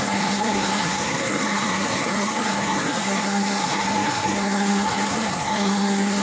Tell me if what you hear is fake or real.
fake